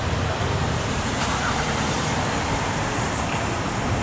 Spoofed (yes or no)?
yes